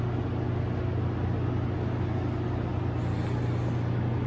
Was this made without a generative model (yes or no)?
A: yes